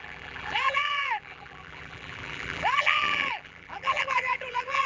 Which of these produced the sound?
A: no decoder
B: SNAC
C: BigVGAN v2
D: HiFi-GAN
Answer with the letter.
C